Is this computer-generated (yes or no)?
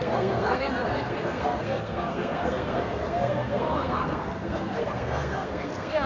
yes